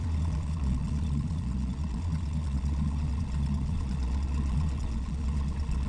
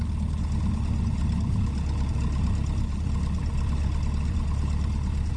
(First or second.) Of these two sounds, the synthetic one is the first